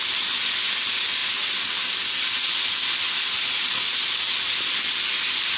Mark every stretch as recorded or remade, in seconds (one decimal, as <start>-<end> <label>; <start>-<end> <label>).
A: 0.0-5.6 recorded